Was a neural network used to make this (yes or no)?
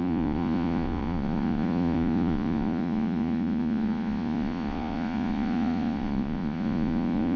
yes